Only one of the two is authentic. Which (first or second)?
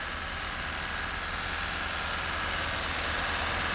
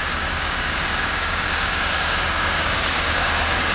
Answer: first